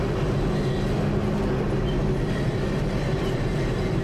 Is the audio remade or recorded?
recorded